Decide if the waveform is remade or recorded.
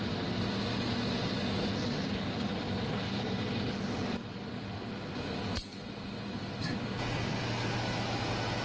recorded